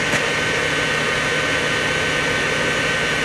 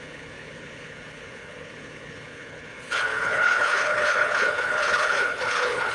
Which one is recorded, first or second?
first